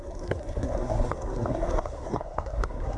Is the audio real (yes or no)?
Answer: no